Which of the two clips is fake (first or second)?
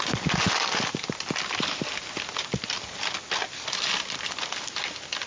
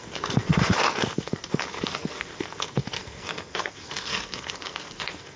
second